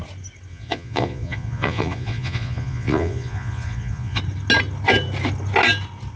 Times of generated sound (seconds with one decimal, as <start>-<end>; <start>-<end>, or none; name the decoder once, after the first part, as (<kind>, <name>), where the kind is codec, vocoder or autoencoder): 0.5-4.2 (vocoder, Vocos)